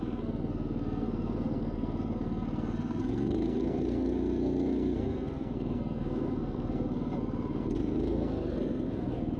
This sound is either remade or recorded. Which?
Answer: remade